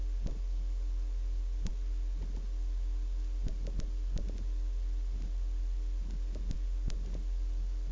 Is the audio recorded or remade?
remade